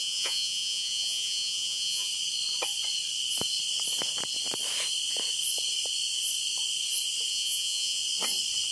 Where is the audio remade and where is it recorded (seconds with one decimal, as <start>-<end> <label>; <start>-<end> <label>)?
0.0-2.1 remade; 2.1-7.3 recorded; 7.3-8.0 remade; 8.0-8.7 recorded